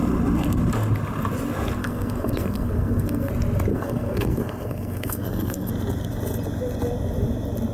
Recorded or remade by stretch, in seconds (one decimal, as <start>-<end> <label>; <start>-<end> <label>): 0.0-1.8 recorded; 1.8-3.3 remade; 3.3-3.7 recorded; 3.7-5.7 remade; 5.7-7.7 recorded